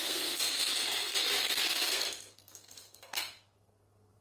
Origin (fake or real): fake